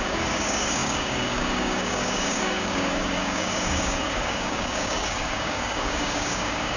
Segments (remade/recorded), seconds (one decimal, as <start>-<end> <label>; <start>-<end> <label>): 0.0-6.8 remade